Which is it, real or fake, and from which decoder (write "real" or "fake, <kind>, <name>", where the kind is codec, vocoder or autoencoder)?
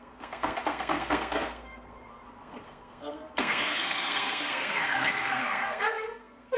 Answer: fake, codec, SNAC